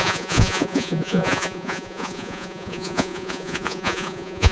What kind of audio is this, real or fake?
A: fake